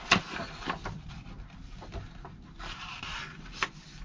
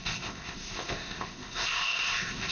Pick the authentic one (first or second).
first